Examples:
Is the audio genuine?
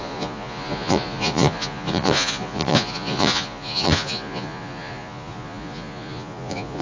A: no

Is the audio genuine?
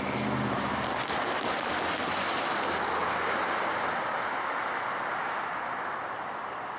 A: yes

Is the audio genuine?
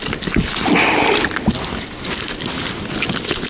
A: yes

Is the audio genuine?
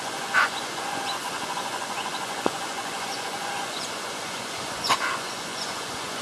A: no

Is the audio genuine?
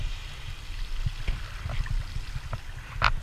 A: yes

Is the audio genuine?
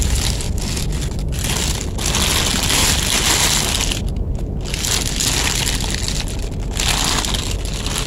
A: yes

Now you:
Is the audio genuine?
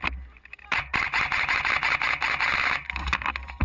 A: yes